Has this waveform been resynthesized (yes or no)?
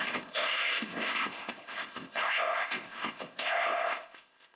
yes